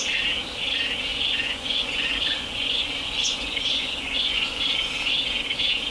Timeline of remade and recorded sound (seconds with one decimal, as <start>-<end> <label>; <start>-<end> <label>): 0.0-1.1 recorded; 1.1-4.6 remade; 4.6-5.9 recorded